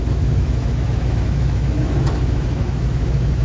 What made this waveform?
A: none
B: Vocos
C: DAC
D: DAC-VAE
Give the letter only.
D